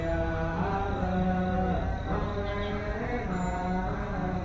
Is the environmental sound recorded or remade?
recorded